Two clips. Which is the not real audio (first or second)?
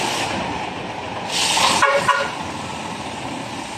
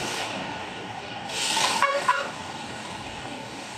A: second